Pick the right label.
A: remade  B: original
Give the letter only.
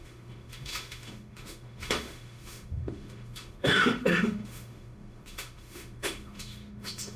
A